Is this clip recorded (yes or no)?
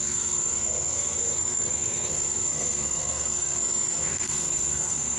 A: no